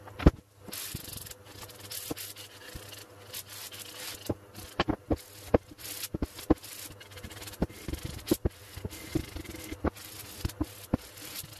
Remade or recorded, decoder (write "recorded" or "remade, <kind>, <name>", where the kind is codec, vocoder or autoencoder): recorded